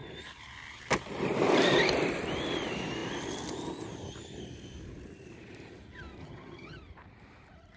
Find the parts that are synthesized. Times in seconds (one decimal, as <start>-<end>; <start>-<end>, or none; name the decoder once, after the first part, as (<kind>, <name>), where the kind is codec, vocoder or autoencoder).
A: 6.2-6.8 (vocoder, HiFi-GAN)